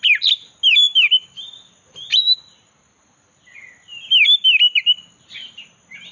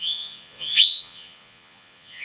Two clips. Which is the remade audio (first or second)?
second